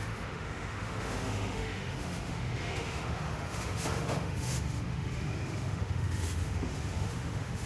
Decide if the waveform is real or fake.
fake